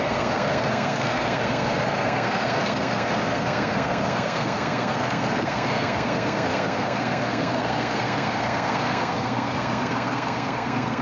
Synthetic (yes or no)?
yes